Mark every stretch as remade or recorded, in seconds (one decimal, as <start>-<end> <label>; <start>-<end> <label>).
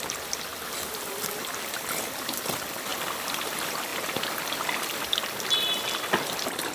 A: 0.0-6.7 recorded